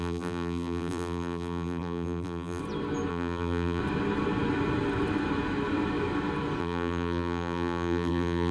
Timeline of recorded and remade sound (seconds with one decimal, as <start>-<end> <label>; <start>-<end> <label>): 0.0-2.6 remade; 2.6-3.1 recorded; 3.1-3.8 remade; 3.8-6.6 recorded; 6.6-8.5 remade